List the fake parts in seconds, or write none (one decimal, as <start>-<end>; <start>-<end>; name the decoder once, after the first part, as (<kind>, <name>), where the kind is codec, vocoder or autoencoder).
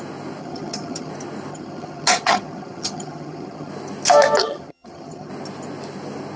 0.4-1.1 (vocoder, HiFi-GAN); 1.5-3.7; 4.4-5.3